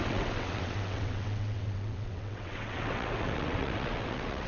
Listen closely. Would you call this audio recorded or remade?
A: remade